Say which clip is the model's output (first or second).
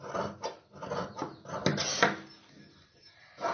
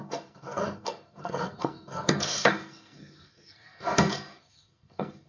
second